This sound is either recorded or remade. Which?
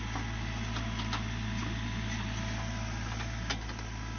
recorded